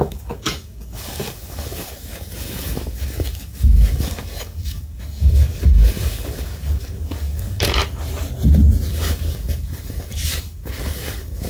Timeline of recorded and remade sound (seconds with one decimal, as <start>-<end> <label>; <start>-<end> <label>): 0.0-7.8 remade; 7.8-8.9 recorded; 8.9-11.5 remade